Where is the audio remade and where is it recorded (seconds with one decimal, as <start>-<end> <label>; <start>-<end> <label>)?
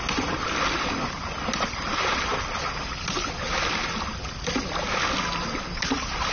0.0-6.3 recorded